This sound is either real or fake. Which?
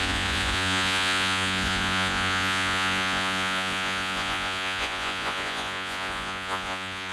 fake